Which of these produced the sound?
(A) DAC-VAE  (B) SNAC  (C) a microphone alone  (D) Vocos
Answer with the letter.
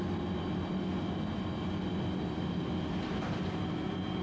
C